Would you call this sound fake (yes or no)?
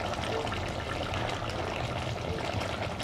no